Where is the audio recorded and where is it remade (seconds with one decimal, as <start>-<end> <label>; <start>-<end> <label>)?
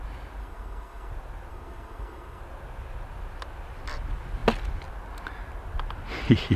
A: 0.0-0.4 recorded; 0.4-1.1 remade; 1.1-1.5 recorded; 1.5-2.4 remade; 2.4-6.6 recorded